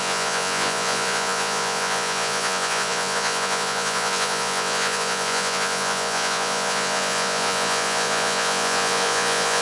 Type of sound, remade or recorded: remade